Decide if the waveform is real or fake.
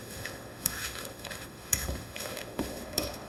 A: fake